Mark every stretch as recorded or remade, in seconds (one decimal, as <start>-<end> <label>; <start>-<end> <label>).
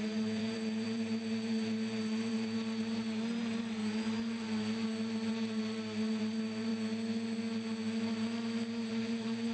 0.0-3.8 remade; 3.8-5.3 recorded; 5.3-6.7 remade; 6.7-8.9 recorded; 8.9-9.5 remade